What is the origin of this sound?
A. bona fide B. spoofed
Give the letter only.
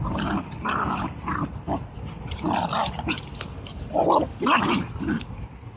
B